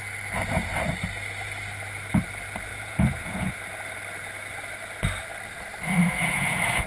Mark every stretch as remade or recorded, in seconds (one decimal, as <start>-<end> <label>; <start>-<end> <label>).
0.0-2.7 recorded; 2.7-3.5 remade; 3.5-6.0 recorded; 6.0-6.9 remade